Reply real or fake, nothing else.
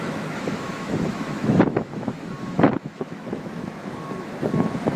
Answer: fake